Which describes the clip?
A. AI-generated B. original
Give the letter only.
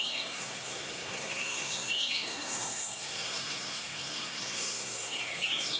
A